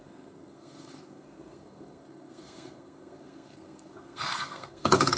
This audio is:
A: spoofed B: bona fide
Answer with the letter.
A